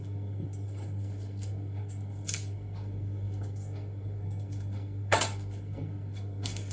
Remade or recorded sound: remade